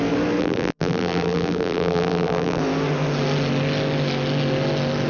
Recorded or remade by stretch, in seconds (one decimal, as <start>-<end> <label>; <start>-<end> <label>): 0.0-0.4 recorded; 0.4-2.6 remade; 2.6-5.1 recorded

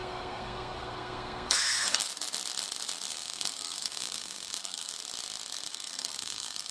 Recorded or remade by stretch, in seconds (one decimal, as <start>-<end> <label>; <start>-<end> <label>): 0.0-2.1 remade; 2.1-3.1 recorded; 3.1-4.9 remade; 4.9-5.7 recorded; 5.7-6.7 remade

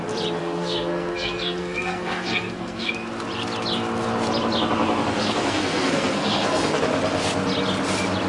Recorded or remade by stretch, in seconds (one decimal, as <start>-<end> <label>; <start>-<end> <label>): 0.0-0.4 recorded; 0.4-2.9 remade; 2.9-5.2 recorded; 5.2-6.8 remade; 6.8-8.3 recorded

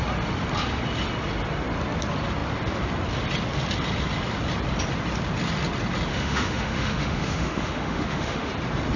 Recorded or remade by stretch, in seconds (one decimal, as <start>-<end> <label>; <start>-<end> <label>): 0.0-6.1 recorded; 6.1-8.5 remade; 8.5-9.0 recorded

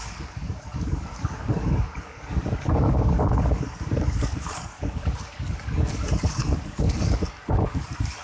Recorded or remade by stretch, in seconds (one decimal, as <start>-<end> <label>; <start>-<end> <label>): 0.0-8.2 remade